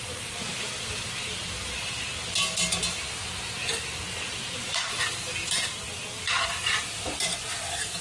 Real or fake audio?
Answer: real